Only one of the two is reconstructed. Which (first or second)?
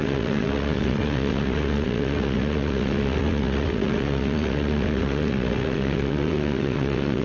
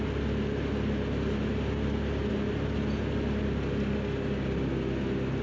first